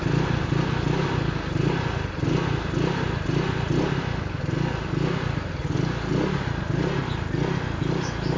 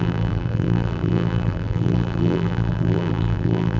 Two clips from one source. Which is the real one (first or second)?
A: first